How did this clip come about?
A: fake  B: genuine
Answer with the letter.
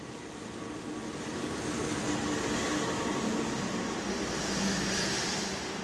B